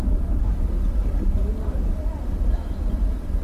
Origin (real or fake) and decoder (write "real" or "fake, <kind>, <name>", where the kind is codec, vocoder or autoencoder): real